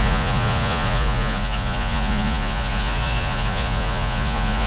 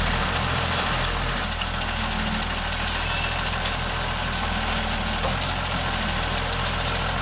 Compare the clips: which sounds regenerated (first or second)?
first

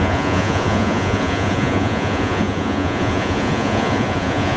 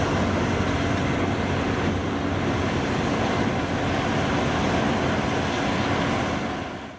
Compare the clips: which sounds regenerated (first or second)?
first